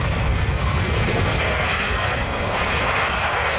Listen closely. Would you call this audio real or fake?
fake